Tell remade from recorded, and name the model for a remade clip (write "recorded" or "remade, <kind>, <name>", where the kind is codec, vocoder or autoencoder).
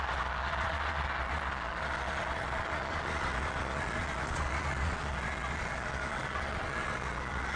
remade, vocoder, Vocos